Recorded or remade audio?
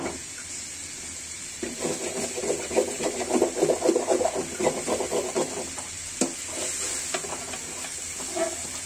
recorded